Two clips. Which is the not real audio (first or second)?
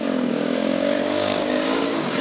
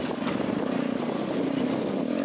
first